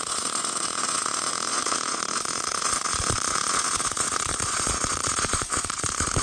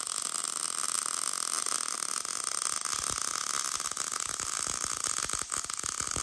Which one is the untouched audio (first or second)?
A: second